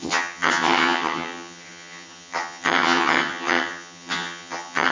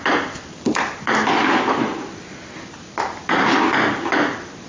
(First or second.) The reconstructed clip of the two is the first